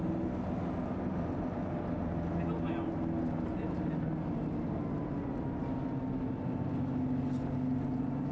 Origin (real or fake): real